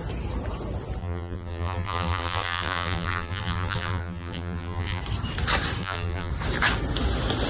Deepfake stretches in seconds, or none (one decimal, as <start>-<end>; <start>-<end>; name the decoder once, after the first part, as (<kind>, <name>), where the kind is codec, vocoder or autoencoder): 1.0-5.0 (vocoder, BigVGAN v2); 5.8-6.3